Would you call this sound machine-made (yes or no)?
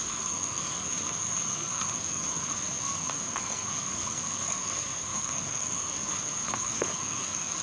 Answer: yes